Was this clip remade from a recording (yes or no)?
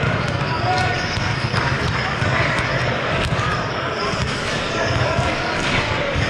yes